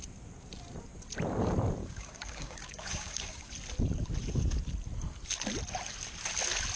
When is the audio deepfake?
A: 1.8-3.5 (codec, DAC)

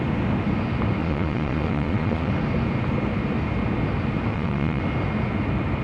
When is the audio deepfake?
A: 1.0-2.3 (vocoder, Vocos); 4.3-4.8

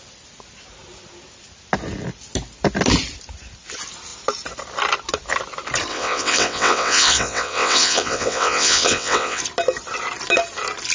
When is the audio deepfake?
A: 5.9-9.4 (vocoder, WaveNeXt)